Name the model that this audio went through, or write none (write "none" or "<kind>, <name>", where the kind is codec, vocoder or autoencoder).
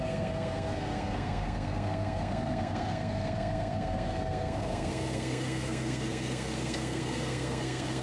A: codec, SNAC